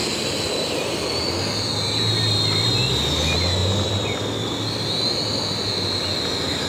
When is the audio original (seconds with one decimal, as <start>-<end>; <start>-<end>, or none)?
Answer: 0.0-6.7